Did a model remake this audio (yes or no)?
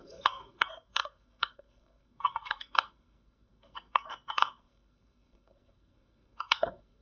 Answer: yes